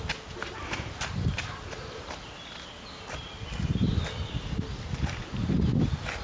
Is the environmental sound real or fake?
real